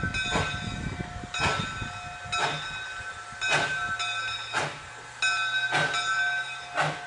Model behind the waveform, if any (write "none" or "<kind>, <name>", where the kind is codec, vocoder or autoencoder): none